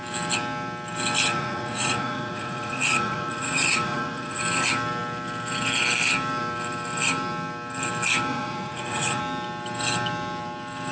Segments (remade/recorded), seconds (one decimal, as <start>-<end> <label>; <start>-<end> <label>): 0.0-1.3 recorded; 1.3-4.4 remade; 4.4-8.3 recorded; 8.3-9.2 remade; 9.2-10.9 recorded